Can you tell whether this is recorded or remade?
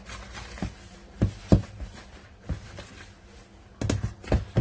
recorded